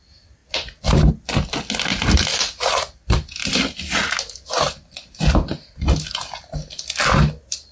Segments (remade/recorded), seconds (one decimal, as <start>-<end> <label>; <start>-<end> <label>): 0.0-7.7 recorded